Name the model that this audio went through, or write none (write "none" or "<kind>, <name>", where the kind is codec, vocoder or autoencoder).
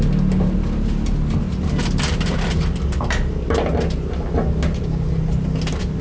none